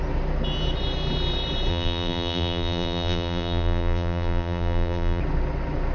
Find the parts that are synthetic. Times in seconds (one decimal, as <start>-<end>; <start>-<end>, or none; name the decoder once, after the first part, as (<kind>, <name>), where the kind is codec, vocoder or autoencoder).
1.7-5.2 (vocoder, BigVGAN v2)

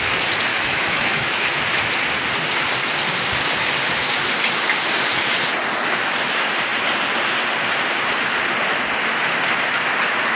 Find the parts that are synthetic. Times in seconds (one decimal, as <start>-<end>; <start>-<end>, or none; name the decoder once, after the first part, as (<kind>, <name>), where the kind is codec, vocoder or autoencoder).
0.5-1.6 (autoencoder, DAC-VAE)

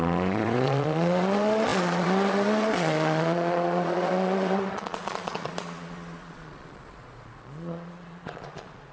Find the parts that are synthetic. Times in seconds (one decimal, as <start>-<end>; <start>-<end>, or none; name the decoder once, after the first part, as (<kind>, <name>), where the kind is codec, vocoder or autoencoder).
0.0-8.9 (vocoder, Vocos)

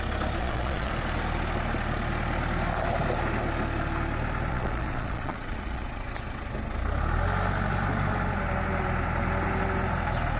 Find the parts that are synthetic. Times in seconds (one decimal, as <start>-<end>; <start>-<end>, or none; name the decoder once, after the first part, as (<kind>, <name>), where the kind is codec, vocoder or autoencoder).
0.4-0.9 (vocoder, Vocos); 4.5-6.1